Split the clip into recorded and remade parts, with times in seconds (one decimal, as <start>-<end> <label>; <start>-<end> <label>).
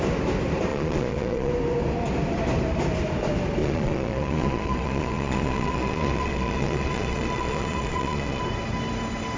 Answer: 0.0-0.7 recorded; 0.7-1.5 remade; 1.5-3.6 recorded; 3.6-8.4 remade; 8.4-9.4 recorded